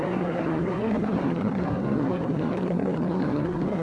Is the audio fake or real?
fake